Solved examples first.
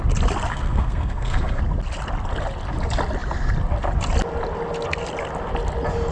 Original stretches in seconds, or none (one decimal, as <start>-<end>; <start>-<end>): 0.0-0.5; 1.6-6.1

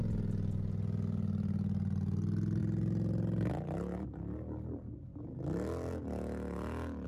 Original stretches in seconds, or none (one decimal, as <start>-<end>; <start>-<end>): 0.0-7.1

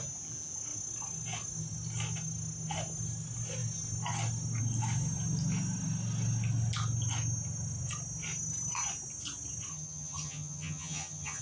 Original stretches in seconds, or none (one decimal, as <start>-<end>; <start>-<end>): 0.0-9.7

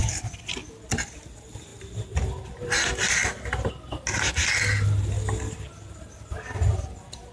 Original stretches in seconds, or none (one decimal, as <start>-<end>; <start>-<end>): 0.0-7.3

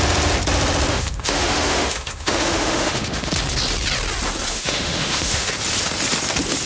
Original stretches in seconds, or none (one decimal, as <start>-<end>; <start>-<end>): 0.0-0.9; 3.3-4.5; 5.5-6.7